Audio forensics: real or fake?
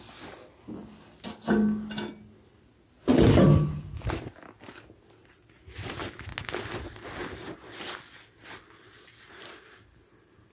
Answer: real